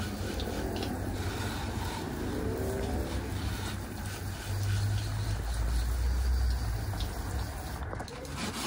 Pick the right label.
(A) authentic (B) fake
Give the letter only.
A